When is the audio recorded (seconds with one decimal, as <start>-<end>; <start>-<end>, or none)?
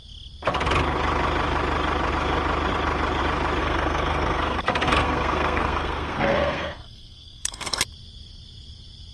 0.0-3.6; 7.8-9.1